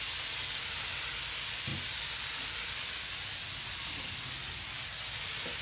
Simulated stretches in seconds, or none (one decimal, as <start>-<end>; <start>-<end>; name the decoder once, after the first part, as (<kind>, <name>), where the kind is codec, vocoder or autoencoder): none